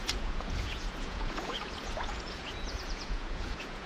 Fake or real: fake